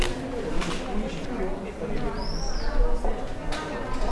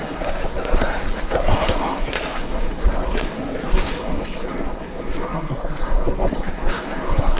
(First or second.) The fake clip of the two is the second